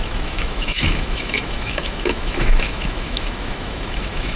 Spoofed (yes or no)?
yes